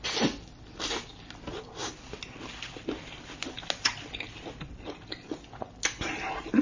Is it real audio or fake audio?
real